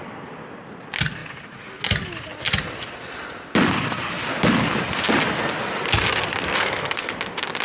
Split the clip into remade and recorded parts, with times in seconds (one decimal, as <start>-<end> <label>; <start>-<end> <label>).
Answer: 0.0-6.5 recorded; 6.5-7.1 remade; 7.1-7.6 recorded